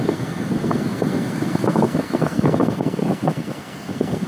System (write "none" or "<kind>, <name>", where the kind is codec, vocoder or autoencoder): codec, SNAC